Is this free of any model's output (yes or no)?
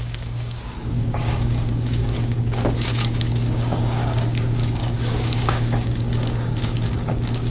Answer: no